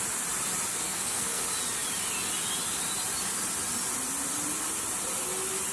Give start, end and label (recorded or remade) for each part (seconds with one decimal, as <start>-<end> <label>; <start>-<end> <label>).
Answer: 0.0-0.7 recorded; 0.7-1.4 remade; 1.4-5.7 recorded